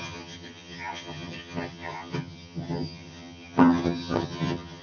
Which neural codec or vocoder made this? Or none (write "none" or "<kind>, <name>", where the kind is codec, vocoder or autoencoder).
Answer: vocoder, HiFi-GAN